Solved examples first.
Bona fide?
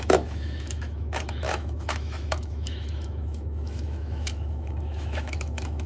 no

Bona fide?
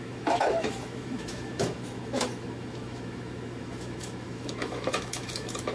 no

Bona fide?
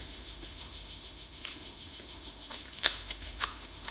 no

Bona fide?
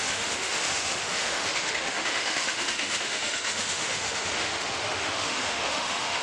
no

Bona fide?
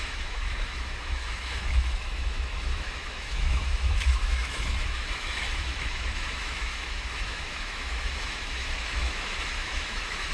no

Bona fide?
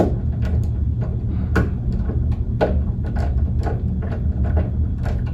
yes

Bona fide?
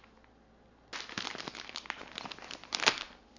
yes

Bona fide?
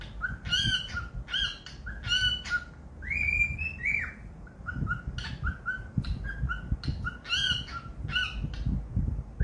yes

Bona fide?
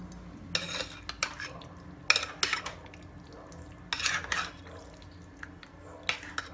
yes